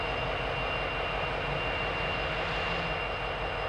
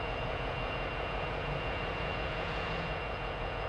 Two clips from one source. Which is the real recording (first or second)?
first